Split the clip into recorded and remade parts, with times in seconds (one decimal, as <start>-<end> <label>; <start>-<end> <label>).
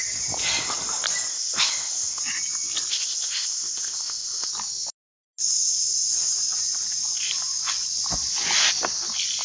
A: 0.0-1.3 recorded; 1.3-2.2 remade; 2.2-2.9 recorded; 2.9-4.5 remade; 4.5-9.4 recorded